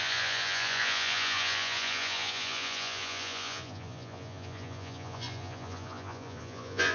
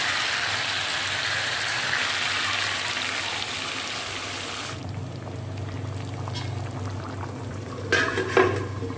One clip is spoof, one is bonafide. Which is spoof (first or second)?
first